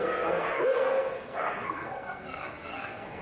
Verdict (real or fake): fake